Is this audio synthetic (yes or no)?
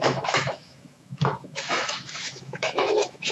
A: yes